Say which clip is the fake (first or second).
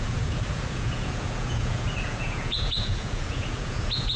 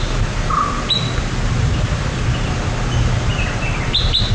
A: first